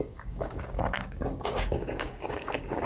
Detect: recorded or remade remade